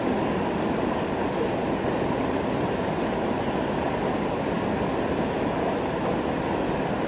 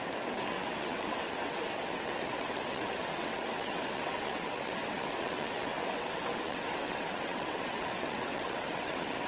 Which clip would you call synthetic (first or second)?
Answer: second